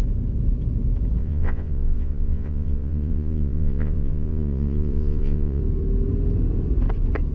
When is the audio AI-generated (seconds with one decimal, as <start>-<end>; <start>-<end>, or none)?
1.2-5.6